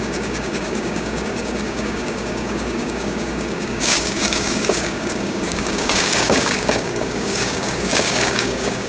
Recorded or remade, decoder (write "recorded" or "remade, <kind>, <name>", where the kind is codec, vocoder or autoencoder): remade, codec, DAC